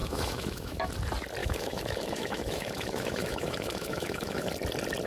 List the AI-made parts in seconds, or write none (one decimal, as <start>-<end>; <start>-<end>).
0.0-0.9; 1.4-4.5